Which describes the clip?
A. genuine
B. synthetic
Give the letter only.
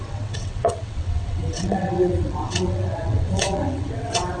B